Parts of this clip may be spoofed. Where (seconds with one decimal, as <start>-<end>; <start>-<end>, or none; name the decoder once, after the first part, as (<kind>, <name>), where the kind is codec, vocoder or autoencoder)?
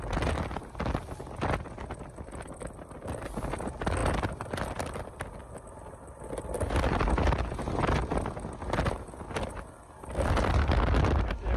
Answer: none